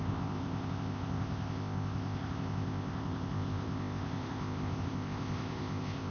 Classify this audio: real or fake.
fake